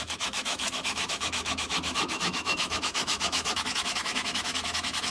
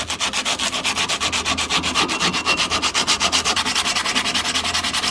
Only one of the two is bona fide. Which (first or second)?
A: second